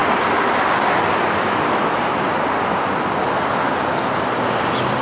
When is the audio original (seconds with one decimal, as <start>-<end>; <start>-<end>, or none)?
0.0-5.0